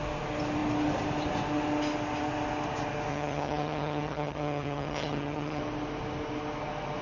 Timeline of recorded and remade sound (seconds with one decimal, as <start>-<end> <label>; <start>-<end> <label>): 0.0-3.1 recorded; 3.1-5.6 remade; 5.6-7.0 recorded